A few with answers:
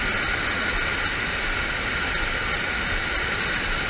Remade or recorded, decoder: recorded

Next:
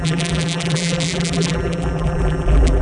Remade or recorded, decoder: remade, vocoder, BigVGAN v2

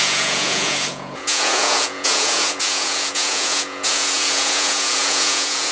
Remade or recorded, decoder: remade, vocoder, Vocos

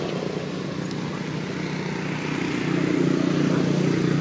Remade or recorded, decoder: recorded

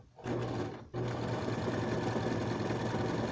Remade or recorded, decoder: recorded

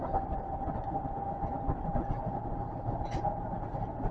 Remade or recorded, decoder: recorded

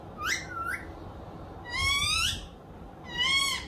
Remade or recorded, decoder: recorded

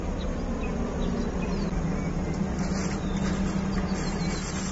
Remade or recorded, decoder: recorded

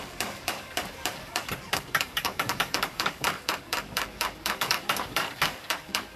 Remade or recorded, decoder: remade, codec, DAC